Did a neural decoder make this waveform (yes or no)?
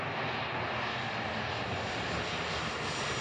no